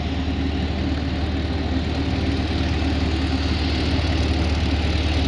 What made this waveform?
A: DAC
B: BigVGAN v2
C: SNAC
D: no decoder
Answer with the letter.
D